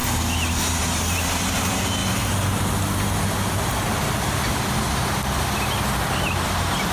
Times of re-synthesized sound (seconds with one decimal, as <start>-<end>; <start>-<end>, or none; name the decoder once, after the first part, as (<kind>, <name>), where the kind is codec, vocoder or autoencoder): none